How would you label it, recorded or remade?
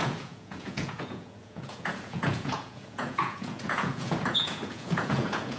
remade